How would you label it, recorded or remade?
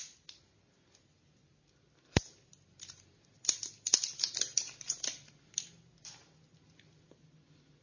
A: recorded